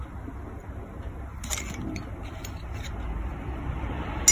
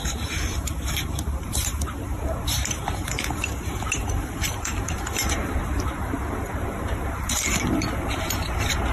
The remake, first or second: second